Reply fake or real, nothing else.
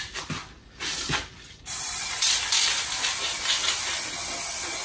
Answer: fake